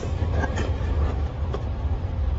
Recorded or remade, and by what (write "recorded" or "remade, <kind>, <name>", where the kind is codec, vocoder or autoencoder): remade, vocoder, BigVGAN v2